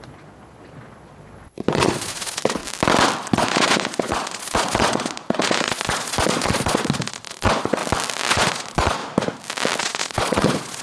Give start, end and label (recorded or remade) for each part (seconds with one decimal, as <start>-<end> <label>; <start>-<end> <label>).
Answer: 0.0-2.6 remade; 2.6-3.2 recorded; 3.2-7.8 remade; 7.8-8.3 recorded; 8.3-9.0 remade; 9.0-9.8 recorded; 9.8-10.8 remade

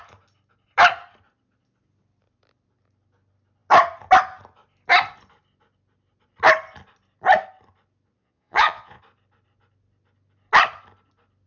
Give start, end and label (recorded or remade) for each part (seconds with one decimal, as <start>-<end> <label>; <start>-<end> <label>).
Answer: 0.0-8.2 recorded; 8.2-9.0 remade; 9.0-11.5 recorded

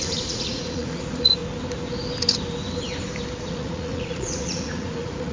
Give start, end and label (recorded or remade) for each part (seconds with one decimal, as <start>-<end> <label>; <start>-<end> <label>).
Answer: 0.0-1.4 remade; 1.4-3.5 recorded; 3.5-5.3 remade

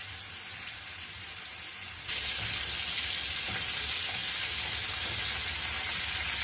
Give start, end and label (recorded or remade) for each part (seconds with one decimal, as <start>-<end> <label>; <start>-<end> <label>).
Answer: 0.0-6.4 recorded

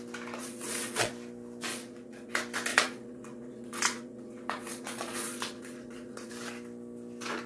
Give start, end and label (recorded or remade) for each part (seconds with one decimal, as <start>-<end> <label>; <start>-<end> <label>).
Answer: 0.0-0.4 recorded; 0.4-1.1 remade; 1.1-1.7 recorded; 1.7-2.3 remade; 2.3-2.7 recorded; 2.7-6.3 remade; 6.3-7.5 recorded